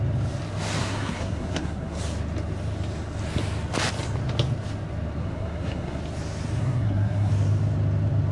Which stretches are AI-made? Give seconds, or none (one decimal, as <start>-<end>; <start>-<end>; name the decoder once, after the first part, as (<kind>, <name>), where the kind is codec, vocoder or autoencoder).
0.8-2.0 (codec, SNAC); 5.2-6.0; 6.6-7.3